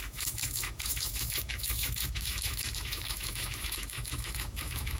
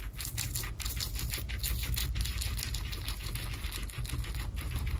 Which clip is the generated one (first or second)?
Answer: first